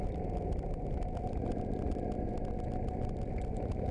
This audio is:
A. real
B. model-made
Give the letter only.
A